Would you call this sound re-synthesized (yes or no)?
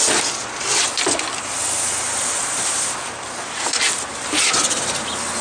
no